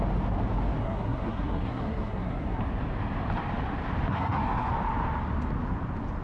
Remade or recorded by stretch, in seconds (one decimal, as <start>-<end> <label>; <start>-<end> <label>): 0.0-0.8 recorded; 0.8-2.6 remade; 2.6-4.1 recorded; 4.1-4.7 remade; 4.7-6.2 recorded